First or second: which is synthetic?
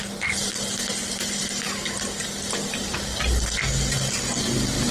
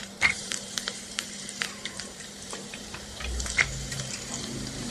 second